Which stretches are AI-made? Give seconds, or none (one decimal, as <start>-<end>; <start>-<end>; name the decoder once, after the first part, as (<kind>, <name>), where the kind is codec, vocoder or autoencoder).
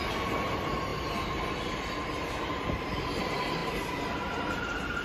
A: none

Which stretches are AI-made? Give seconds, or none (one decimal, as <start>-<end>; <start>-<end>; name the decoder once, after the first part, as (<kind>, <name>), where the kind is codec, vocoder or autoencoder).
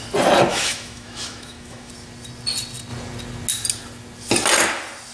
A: 0.5-1.9 (autoencoder, DAC-VAE)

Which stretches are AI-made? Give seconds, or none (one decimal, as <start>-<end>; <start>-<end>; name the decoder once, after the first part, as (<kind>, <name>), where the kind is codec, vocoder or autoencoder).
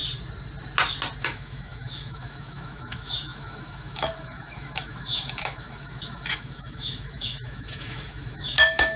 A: 1.2-9.0 (autoencoder, DAC-VAE)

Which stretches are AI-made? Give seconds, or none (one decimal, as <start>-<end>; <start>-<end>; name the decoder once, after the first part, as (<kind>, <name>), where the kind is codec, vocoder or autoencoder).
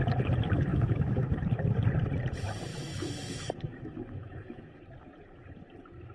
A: 0.7-1.4 (autoencoder, DAC-VAE); 2.7-4.8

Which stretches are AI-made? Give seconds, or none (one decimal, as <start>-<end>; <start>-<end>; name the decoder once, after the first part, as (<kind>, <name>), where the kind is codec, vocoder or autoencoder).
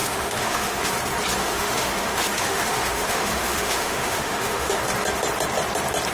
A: 0.0-0.9 (autoencoder, DAC-VAE); 1.4-4.8